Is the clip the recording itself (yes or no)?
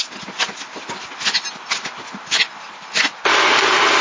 yes